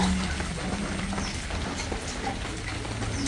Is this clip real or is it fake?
real